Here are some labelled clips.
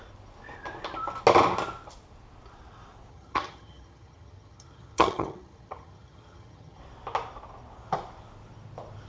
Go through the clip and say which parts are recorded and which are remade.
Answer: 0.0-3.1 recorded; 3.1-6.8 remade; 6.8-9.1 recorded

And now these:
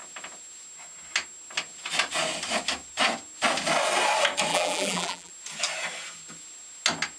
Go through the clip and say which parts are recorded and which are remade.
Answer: 0.0-4.5 recorded; 4.5-5.3 remade; 5.3-7.2 recorded

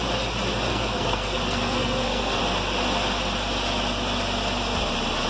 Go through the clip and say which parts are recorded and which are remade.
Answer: 0.0-0.7 recorded; 0.7-2.4 remade; 2.4-5.3 recorded

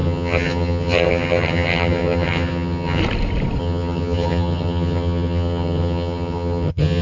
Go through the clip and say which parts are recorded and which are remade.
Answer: 0.0-3.0 remade; 3.0-3.6 recorded; 3.6-7.0 remade

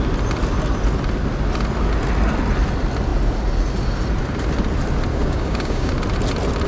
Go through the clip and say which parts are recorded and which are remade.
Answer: 0.0-5.1 recorded; 5.1-5.9 remade; 5.9-6.7 recorded

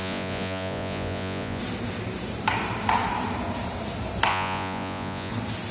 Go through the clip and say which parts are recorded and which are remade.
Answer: 0.0-1.6 remade; 1.6-4.3 recorded; 4.3-5.3 remade; 5.3-5.7 recorded

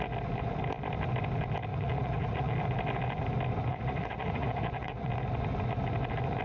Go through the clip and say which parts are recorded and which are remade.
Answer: 0.0-1.7 recorded; 1.7-2.5 remade; 2.5-3.7 recorded; 3.7-5.1 remade; 5.1-6.4 recorded